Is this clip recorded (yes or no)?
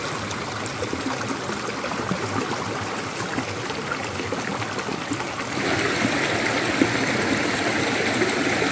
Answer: yes